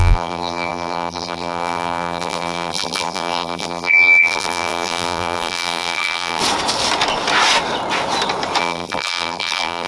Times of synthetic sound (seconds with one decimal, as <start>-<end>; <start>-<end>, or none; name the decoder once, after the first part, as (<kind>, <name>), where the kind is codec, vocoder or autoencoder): 0.0-6.4 (vocoder, BigVGAN v2); 8.6-9.9